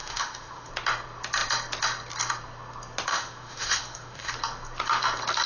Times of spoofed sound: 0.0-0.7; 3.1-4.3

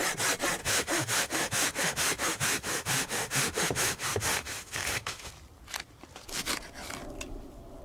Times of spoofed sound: 0.6-5.3